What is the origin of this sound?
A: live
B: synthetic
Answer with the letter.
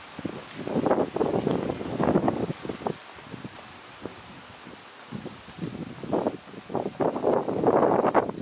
A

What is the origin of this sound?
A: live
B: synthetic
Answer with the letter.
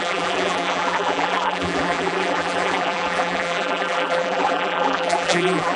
B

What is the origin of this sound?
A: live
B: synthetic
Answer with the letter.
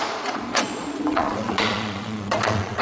B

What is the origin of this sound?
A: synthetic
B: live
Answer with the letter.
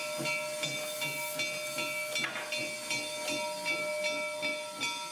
B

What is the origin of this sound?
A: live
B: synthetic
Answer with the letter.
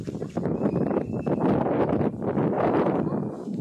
A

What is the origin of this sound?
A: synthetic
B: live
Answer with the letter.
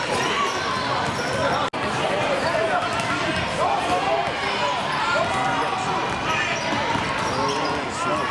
B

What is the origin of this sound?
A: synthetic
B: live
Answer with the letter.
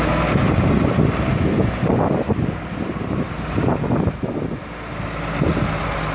B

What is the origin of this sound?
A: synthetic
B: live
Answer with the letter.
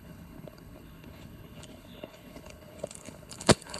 A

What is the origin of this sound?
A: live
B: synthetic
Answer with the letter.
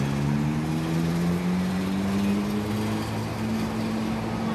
A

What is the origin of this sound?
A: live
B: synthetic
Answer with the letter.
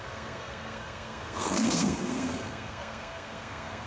B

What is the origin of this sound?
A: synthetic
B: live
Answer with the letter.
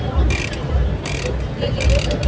B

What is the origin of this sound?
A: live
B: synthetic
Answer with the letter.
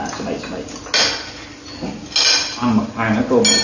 A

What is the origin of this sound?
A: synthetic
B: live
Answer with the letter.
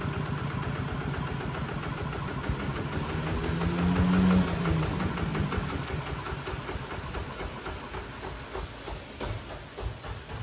B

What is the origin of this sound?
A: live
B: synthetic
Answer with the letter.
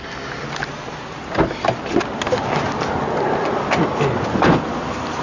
A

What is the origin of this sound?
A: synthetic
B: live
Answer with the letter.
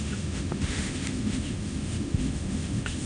A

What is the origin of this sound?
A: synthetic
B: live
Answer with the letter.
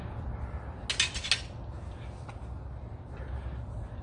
B